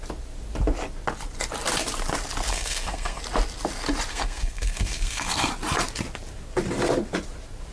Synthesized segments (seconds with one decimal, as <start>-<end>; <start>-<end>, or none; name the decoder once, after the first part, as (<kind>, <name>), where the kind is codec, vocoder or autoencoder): 2.5-3.2 (codec, SNAC); 4.1-5.5